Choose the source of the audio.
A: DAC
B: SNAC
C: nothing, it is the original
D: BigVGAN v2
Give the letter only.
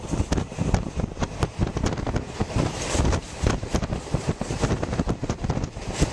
C